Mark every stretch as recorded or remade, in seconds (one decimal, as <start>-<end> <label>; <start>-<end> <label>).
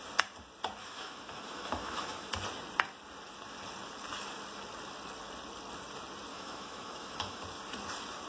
0.0-0.8 recorded; 0.8-2.3 remade; 2.3-6.3 recorded; 6.3-7.4 remade; 7.4-8.3 recorded